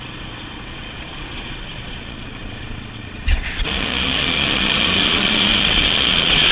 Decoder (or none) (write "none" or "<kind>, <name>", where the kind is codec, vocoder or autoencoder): vocoder, Vocos